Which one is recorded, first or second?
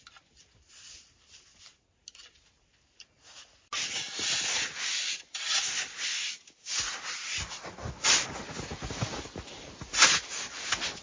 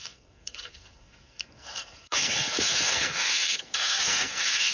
first